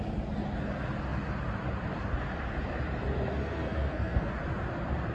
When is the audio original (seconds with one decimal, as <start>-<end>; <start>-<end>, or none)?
0.0-3.4; 4.3-5.1